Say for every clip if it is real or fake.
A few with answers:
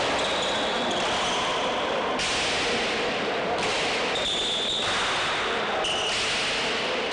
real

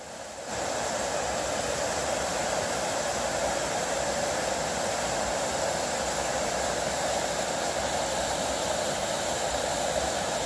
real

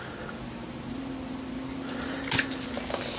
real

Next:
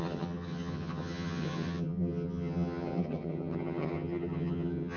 fake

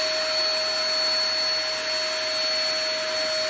real